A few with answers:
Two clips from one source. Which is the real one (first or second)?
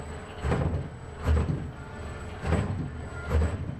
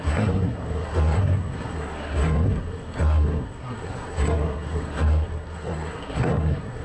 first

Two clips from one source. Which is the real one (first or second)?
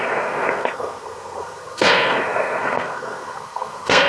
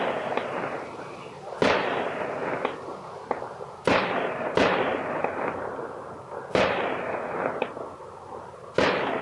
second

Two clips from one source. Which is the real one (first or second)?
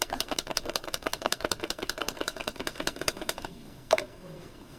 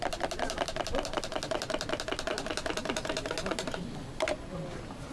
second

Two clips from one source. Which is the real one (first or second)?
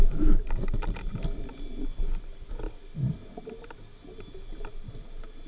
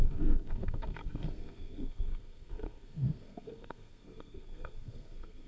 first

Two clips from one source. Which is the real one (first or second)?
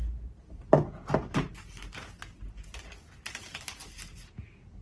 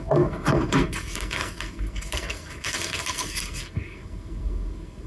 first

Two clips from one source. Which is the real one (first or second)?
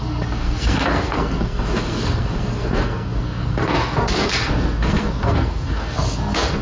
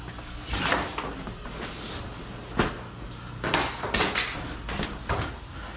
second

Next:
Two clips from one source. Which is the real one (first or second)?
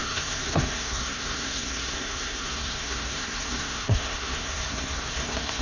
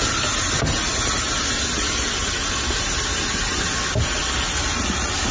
second